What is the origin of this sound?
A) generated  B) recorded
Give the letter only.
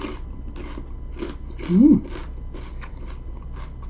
B